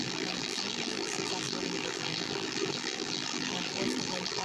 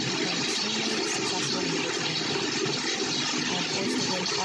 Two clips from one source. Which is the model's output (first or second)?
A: first